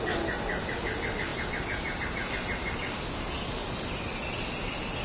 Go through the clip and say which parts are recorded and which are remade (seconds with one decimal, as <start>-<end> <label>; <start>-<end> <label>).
0.0-5.0 recorded